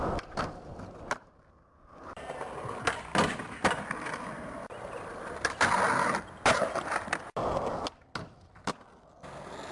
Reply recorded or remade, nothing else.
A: recorded